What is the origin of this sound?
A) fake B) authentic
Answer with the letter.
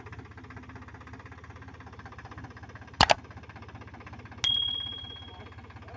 B